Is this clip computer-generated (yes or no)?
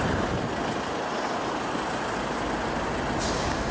no